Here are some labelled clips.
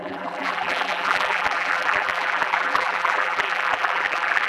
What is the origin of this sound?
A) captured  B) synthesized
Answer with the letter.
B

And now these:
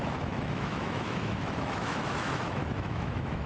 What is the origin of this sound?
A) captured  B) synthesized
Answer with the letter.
B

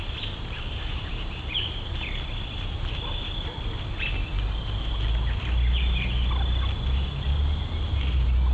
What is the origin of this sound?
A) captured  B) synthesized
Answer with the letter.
A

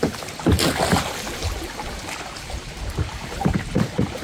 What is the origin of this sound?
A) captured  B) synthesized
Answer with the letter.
A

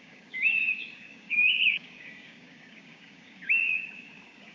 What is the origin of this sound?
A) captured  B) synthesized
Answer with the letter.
B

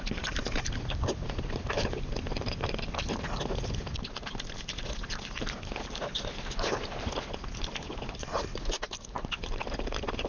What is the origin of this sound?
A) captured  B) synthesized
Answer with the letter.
A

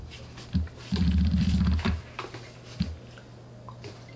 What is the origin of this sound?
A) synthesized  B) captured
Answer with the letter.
B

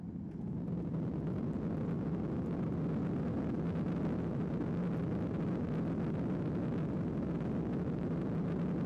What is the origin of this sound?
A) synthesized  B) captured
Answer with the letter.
B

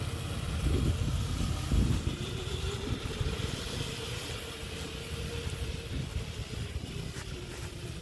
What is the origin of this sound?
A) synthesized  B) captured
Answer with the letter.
B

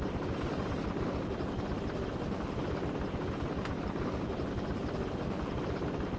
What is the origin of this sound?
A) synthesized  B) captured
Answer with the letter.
B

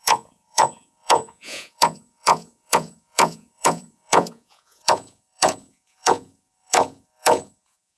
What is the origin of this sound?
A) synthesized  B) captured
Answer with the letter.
A